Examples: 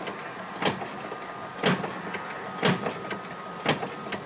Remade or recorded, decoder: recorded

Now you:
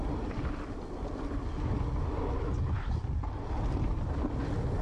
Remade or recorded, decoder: recorded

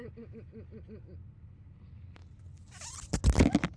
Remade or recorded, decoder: recorded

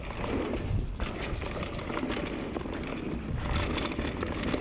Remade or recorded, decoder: recorded